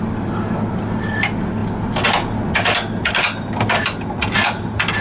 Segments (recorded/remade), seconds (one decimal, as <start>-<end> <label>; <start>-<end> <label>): 0.0-5.0 recorded